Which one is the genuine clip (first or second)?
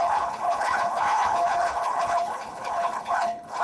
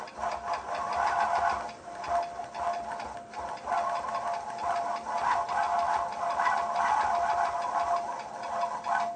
second